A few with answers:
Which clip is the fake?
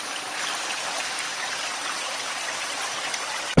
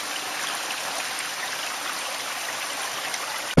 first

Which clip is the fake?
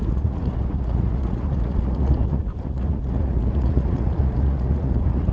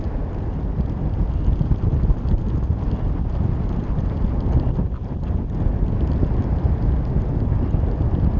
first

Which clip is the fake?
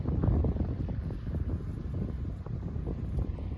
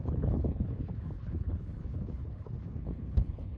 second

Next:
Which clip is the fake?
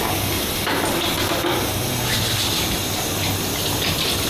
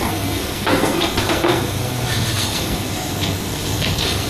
second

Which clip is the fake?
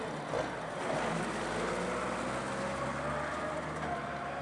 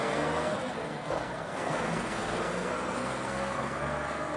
second